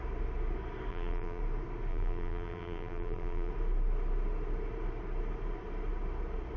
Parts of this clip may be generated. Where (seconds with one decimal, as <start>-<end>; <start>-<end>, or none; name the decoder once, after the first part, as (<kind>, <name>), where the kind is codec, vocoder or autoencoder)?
0.9-1.4 (vocoder, BigVGAN v2); 1.9-3.5